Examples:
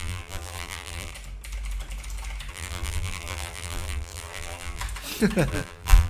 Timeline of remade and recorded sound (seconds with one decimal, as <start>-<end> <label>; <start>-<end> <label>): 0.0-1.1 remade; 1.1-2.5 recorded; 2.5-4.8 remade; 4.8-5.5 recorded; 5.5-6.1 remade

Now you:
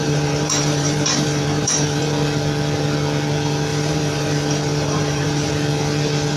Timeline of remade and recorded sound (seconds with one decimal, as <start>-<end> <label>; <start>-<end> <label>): 0.0-2.0 remade; 2.0-3.7 recorded; 3.7-5.5 remade; 5.5-6.4 recorded

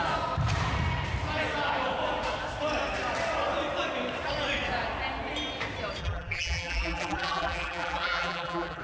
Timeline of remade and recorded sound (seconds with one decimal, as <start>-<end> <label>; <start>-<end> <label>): 0.0-6.0 recorded; 6.0-8.8 remade